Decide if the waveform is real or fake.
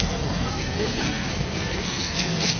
fake